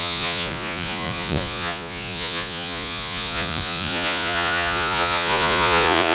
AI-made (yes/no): yes